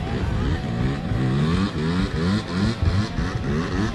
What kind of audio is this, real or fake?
real